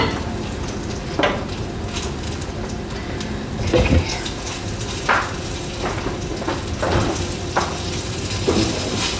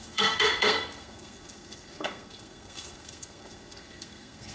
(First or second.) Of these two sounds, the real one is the first